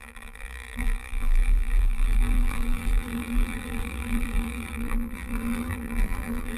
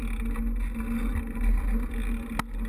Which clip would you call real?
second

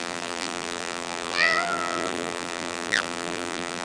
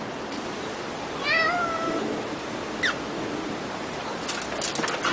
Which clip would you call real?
second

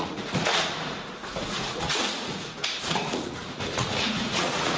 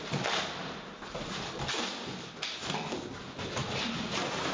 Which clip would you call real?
second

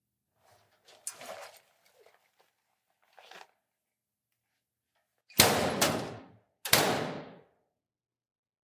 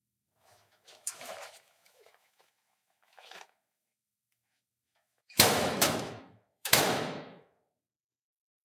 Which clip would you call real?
first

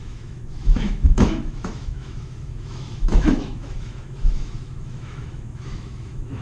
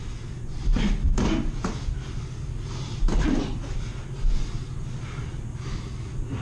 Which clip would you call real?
second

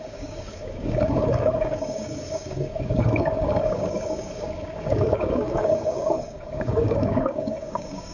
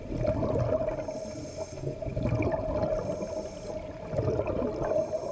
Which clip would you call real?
second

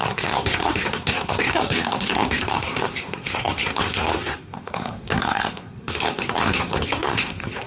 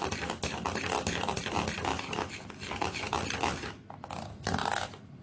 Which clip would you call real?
second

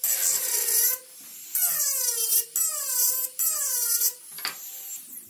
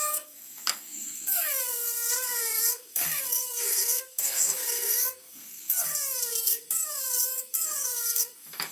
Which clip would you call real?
first